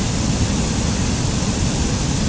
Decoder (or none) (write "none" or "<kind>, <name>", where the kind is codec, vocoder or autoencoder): none